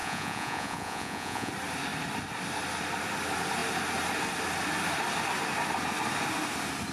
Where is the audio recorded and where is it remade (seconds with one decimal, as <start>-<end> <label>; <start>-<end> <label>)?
0.0-1.5 remade; 1.5-6.9 recorded